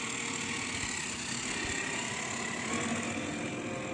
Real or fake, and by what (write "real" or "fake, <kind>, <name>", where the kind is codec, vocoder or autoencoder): real